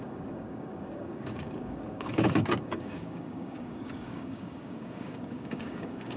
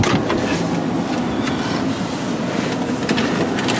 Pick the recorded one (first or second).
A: second